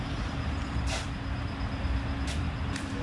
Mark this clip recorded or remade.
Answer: remade